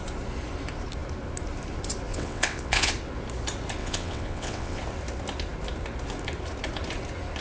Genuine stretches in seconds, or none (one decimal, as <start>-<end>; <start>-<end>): 0.0-2.1; 2.9-3.8; 4.8-7.4